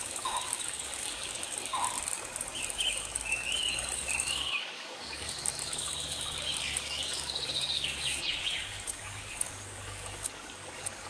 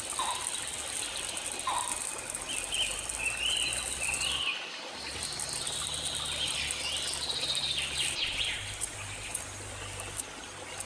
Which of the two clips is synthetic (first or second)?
first